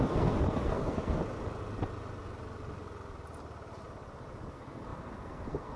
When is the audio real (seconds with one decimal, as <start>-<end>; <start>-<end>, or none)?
1.2-4.5